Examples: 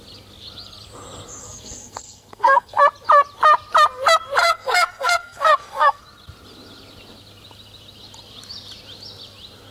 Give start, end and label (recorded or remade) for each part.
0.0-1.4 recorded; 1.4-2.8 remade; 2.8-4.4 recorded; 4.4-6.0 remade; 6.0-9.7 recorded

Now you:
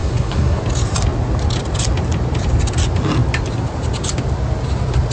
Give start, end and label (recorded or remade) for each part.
0.0-0.6 remade; 0.6-5.1 recorded

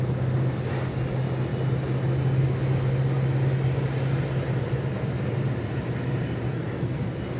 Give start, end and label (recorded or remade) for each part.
0.0-6.5 recorded; 6.5-7.0 remade; 7.0-7.4 recorded

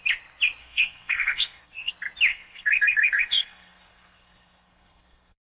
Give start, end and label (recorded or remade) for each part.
0.0-0.6 recorded; 0.6-1.9 remade; 1.9-2.3 recorded; 2.3-5.5 remade

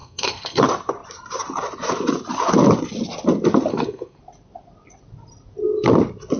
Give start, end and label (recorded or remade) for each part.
0.0-0.6 remade; 0.6-3.7 recorded; 3.7-4.2 remade; 4.2-6.4 recorded

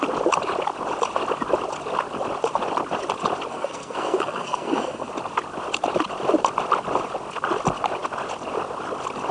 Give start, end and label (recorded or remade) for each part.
0.0-3.5 recorded; 3.5-5.1 remade; 5.1-9.3 recorded

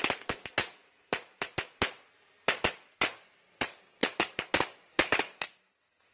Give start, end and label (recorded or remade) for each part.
0.0-6.1 recorded

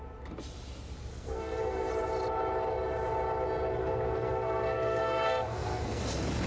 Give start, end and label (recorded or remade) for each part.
0.0-1.1 recorded; 1.1-1.9 remade; 1.9-3.8 recorded; 3.8-6.0 remade; 6.0-6.5 recorded